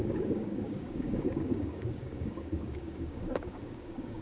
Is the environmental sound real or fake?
fake